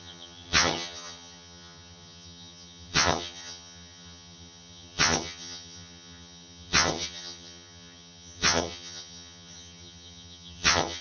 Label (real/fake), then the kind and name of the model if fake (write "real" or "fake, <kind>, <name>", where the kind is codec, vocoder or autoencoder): fake, vocoder, HiFi-GAN